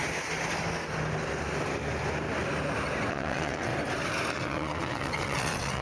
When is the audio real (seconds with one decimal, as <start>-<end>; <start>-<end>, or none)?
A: 0.0-3.1; 3.7-4.3